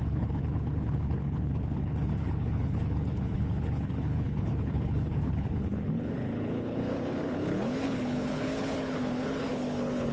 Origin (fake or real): fake